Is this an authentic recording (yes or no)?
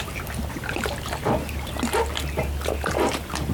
yes